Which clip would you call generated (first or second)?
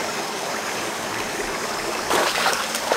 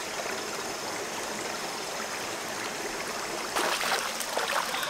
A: first